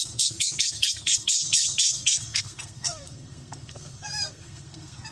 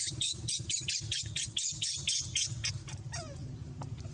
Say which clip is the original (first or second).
second